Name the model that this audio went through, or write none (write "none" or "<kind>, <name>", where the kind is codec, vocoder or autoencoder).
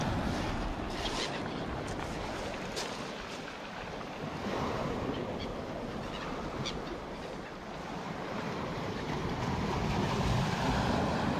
none